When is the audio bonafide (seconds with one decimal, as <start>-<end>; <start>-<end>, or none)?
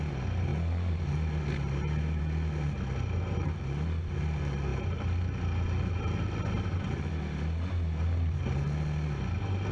0.0-9.7